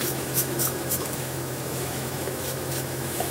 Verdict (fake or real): fake